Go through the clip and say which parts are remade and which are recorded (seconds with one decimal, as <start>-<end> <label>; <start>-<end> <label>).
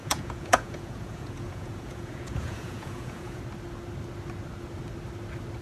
0.0-3.4 remade; 3.4-5.6 recorded